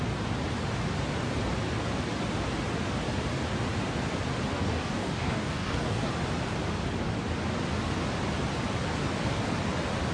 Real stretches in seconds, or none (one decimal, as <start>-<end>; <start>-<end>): 0.0-4.5; 6.1-10.1